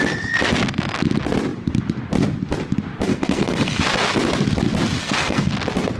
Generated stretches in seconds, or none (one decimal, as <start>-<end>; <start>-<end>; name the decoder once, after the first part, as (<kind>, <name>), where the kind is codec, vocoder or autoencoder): 3.1-3.8 (codec, SNAC); 5.0-5.5